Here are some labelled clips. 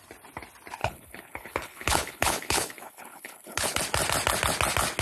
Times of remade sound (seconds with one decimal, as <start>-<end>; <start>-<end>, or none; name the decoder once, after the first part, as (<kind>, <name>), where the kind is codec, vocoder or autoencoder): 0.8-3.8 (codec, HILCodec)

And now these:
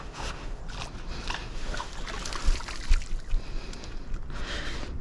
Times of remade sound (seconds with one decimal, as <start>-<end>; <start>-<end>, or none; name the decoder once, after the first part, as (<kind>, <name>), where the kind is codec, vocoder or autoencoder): 0.0-0.6 (autoencoder, DAC-VAE); 1.5-1.9

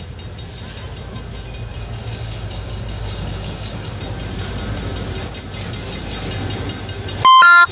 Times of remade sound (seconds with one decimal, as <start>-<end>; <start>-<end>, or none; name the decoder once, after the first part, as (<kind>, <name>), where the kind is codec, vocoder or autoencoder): 1.7-4.0 (codec, DAC)

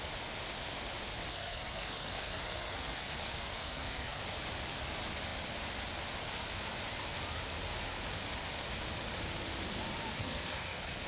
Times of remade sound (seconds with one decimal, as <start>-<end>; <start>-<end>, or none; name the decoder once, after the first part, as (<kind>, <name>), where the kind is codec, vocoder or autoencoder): 1.3-4.2 (codec, SNAC); 10.2-11.1

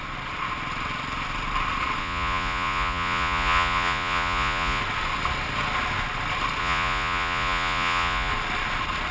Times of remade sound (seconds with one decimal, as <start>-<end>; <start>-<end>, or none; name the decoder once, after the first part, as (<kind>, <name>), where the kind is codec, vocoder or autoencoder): 2.0-4.8 (vocoder, Vocos); 6.6-8.3

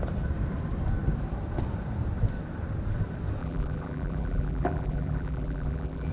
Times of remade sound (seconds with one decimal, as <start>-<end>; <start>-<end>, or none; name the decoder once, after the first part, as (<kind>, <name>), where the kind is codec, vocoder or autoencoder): 3.4-6.1 (vocoder, BigVGAN v2)